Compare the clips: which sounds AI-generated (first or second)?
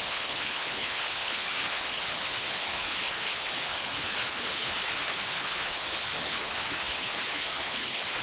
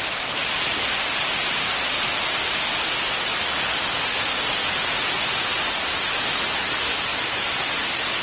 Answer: first